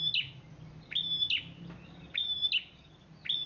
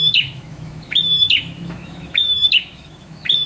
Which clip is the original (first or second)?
first